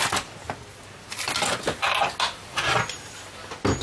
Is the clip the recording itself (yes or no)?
yes